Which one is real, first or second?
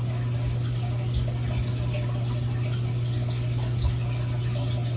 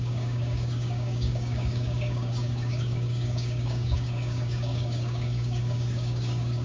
first